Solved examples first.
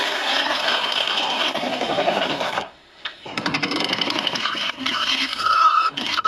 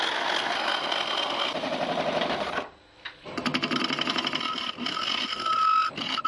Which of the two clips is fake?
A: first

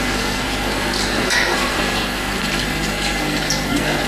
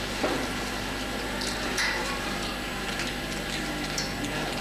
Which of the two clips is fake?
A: first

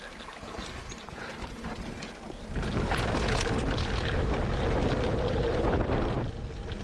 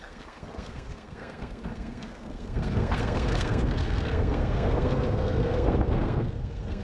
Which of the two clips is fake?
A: second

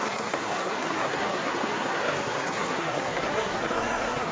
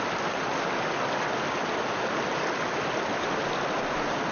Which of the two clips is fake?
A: first